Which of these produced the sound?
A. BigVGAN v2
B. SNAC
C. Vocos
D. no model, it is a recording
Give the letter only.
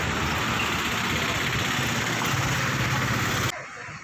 D